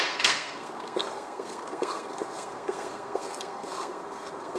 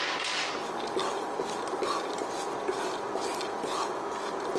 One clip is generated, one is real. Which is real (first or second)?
second